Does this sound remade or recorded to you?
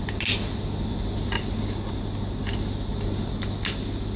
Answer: recorded